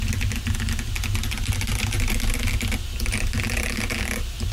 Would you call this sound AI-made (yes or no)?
no